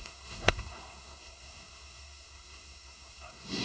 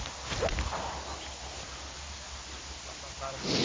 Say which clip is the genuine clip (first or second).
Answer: second